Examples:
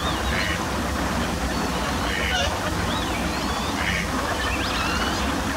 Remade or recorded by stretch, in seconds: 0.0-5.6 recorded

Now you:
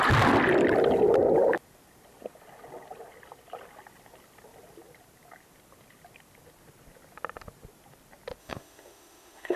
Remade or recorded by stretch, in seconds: 0.0-8.4 recorded; 8.4-9.6 remade

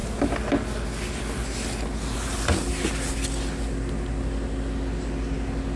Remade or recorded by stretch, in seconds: 0.0-5.8 recorded

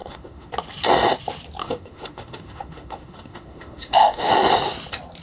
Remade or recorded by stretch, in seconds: 0.0-0.5 remade; 0.5-1.6 recorded; 1.6-4.3 remade; 4.3-5.2 recorded

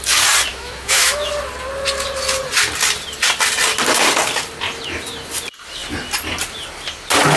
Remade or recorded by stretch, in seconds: 0.0-0.5 recorded; 0.5-1.3 remade; 1.3-7.4 recorded

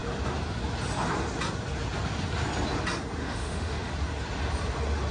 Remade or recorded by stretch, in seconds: 0.0-3.2 recorded; 3.2-3.9 remade; 3.9-5.1 recorded

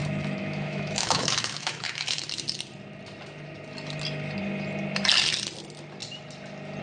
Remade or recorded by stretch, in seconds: 0.0-2.2 remade; 2.2-6.8 recorded

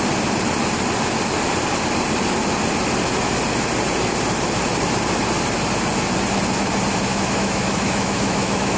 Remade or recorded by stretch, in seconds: 0.0-7.1 recorded; 7.1-8.8 remade